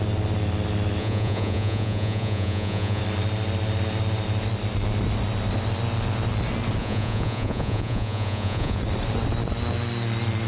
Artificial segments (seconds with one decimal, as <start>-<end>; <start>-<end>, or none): 1.0-3.0; 6.8-8.8